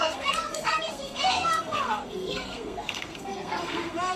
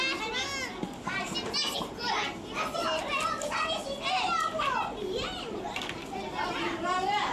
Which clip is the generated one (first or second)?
first